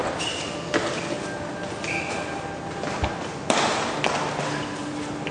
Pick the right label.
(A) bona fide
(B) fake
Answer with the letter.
A